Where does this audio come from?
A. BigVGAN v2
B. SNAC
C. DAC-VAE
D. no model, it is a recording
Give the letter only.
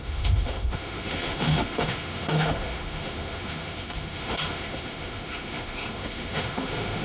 C